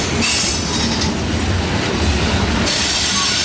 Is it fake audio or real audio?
real